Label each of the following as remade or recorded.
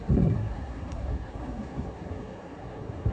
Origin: remade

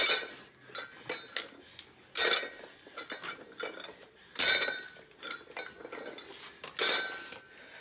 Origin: recorded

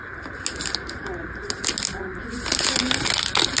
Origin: recorded